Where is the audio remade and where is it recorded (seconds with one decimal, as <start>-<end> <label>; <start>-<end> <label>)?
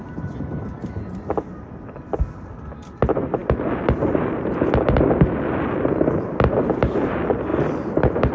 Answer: 0.0-8.3 recorded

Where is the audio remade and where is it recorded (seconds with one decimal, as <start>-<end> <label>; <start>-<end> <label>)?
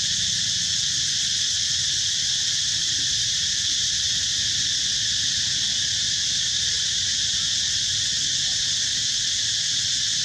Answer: 0.0-2.8 recorded; 2.8-4.0 remade; 4.0-10.2 recorded